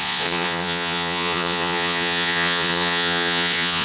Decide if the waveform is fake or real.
fake